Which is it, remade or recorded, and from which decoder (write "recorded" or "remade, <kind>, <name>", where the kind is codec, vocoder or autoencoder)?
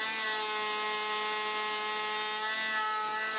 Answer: recorded